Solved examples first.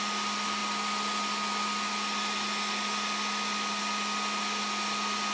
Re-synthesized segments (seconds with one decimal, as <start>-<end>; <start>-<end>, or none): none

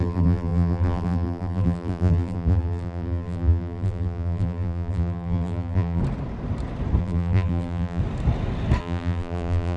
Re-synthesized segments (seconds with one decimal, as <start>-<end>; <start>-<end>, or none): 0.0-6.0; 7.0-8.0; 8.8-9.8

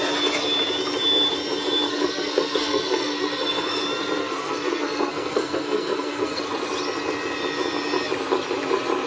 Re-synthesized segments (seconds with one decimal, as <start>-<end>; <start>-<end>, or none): 1.9-3.8; 4.2-6.4